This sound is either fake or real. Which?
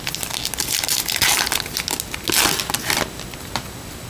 real